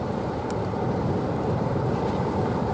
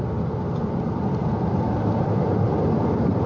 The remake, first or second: first